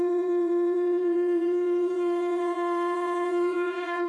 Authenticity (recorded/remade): remade